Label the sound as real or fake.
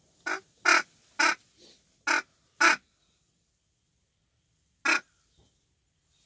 real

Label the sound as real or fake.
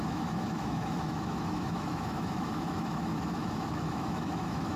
fake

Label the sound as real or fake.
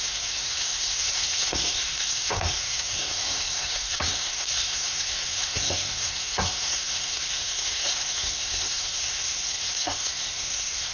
fake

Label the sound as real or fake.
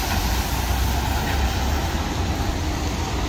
real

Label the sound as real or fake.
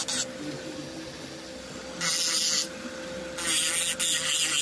real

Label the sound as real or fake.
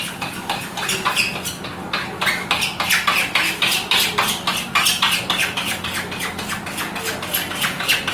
real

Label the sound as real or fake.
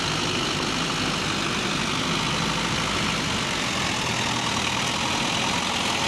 real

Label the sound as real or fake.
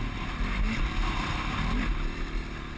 real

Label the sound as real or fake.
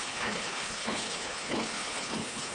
fake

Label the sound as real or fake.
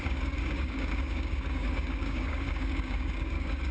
fake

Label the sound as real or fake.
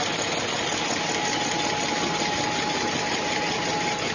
real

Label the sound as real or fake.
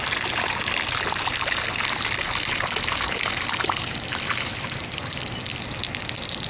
real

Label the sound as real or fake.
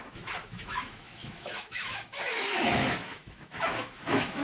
fake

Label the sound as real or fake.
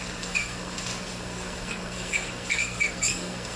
fake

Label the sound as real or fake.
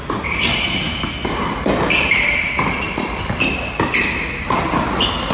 real